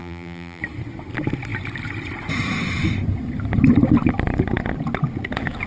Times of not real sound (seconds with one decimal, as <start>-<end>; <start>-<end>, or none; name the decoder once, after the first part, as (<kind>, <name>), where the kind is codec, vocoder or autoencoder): 0.0-0.6 (vocoder, BigVGAN v2)